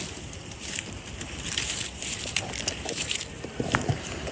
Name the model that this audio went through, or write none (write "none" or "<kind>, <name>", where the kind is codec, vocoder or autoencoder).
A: vocoder, BigVGAN v2